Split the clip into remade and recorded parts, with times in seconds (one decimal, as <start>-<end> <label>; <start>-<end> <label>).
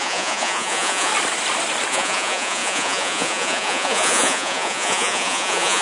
0.0-1.1 remade; 1.1-1.9 recorded; 1.9-5.8 remade